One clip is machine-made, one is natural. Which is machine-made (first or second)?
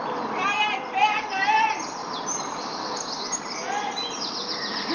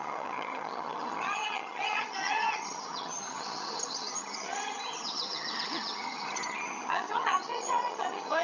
second